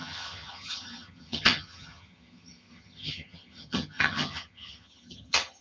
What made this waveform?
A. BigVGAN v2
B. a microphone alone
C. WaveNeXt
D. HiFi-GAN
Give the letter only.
D